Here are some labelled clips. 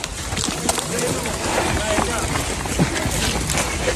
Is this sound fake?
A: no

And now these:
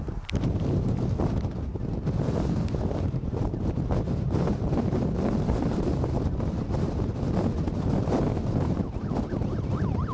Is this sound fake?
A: no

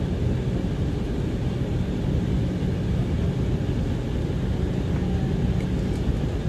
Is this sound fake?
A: no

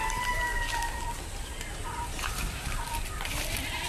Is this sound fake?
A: no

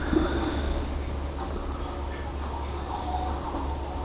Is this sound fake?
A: no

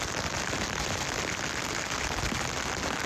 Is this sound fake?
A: no